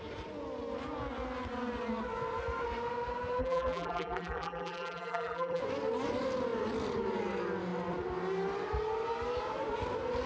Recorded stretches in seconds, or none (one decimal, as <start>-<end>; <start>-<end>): 0.0-3.4; 5.6-10.3